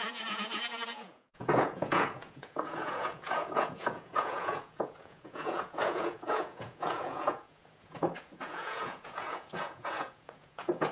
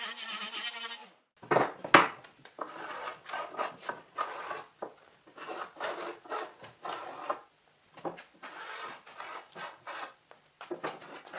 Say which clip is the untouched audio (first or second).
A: second